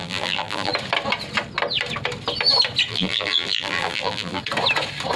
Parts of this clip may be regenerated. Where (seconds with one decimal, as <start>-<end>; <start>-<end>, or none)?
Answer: 0.0-0.7; 2.9-4.4